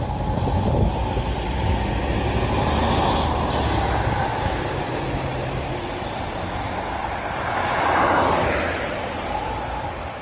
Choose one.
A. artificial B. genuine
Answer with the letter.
B